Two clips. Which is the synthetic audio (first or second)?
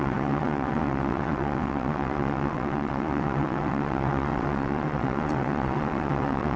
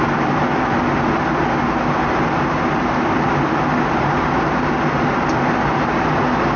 first